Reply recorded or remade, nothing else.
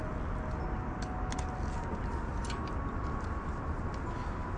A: recorded